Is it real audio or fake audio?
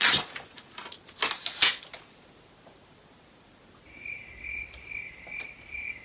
real